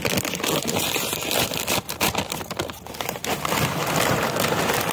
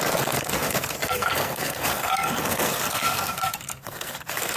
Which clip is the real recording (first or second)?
first